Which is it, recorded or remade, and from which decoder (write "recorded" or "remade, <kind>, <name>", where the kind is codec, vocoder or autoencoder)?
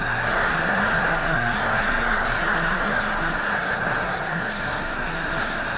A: remade, codec, SNAC